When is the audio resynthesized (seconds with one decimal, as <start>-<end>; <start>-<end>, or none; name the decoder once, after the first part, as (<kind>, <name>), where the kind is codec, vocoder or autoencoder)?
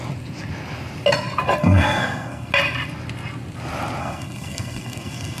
1.6-2.5 (codec, SNAC); 4.0-5.4